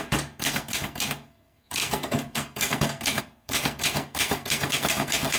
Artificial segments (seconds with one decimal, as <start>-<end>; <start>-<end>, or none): 0.0-5.4